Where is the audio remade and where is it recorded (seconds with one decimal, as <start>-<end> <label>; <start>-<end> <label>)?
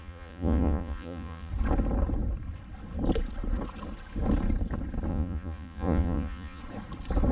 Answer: 0.0-1.5 remade; 1.5-5.1 recorded; 5.1-6.6 remade; 6.6-7.3 recorded